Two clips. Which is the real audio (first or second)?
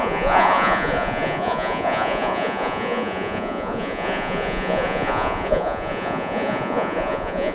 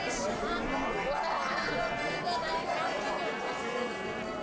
second